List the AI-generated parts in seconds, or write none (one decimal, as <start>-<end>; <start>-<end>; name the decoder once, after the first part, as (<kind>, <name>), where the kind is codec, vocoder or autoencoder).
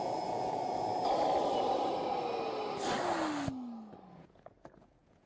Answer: 0.0-0.9 (vocoder, Vocos); 4.1-5.3